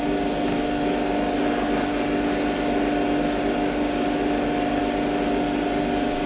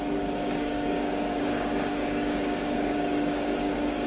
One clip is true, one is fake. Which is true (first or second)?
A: first